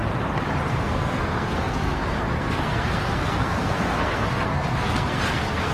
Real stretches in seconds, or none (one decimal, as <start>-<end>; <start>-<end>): 0.0-0.7